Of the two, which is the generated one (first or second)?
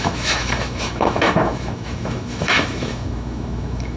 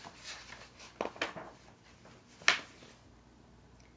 first